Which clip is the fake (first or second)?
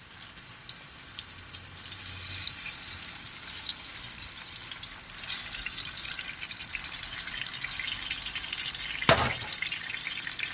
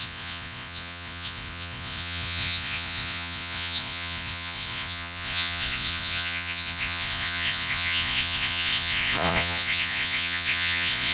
second